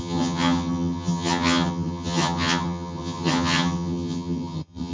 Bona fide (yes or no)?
no